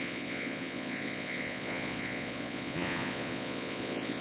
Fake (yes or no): yes